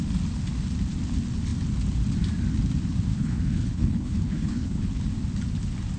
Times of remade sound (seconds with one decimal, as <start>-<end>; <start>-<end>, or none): 3.1-5.0